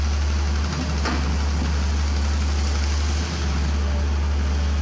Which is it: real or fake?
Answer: real